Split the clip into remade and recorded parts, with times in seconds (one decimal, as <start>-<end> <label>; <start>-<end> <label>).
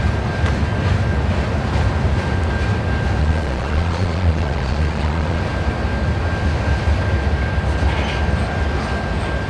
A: 0.0-3.2 recorded; 3.2-5.4 remade; 5.4-9.5 recorded